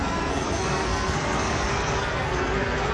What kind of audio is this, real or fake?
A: fake